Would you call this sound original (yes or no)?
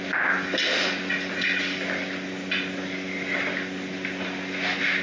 yes